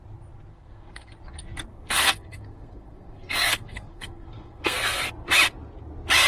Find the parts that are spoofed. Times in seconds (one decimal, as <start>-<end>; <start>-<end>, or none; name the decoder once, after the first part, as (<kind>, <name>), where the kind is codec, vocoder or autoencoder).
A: 0.5-1.1 (codec, SNAC); 1.7-5.1